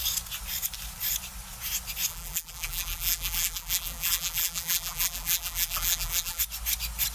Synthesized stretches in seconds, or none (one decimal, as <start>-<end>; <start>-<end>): 2.1-6.4